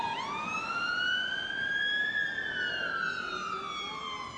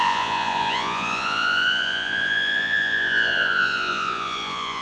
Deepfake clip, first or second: second